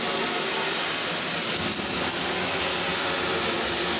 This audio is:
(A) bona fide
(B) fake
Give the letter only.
A